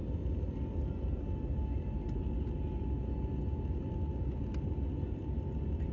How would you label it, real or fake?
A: real